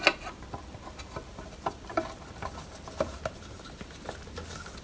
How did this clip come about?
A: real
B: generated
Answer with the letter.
A